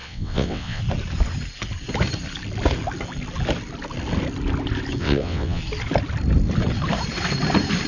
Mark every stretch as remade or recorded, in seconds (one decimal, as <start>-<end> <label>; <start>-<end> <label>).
0.0-0.8 remade; 0.8-5.0 recorded; 5.0-5.6 remade; 5.6-7.9 recorded